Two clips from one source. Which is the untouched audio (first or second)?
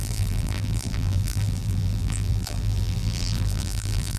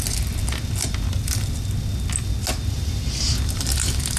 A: second